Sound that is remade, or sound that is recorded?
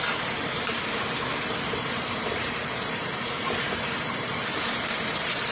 remade